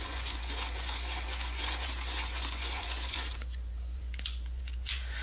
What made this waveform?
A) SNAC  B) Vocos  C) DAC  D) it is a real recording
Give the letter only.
B